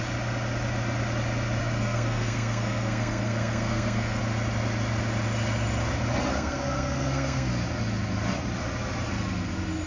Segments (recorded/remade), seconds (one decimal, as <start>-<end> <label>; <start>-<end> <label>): 0.0-1.6 recorded; 1.6-4.2 remade; 4.2-6.3 recorded; 6.3-7.5 remade; 7.5-9.9 recorded